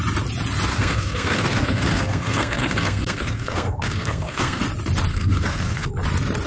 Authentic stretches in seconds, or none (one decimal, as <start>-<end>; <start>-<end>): 0.0-0.7; 4.6-5.1; 5.9-6.5